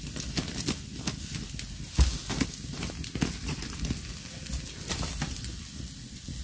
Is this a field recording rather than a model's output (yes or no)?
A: yes